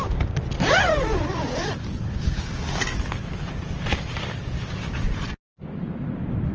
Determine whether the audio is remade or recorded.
recorded